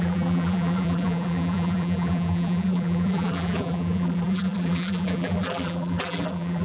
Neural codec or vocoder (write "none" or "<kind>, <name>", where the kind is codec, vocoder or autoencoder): vocoder, BigVGAN v2